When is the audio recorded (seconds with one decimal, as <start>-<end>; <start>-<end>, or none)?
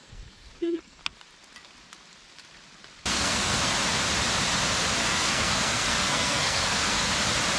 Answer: 1.0-3.1; 3.7-5.0; 7.1-7.6